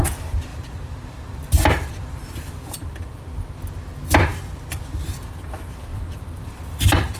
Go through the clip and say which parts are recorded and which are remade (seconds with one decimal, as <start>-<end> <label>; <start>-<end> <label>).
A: 0.0-0.5 recorded; 0.5-2.9 remade; 2.9-5.9 recorded; 5.9-7.2 remade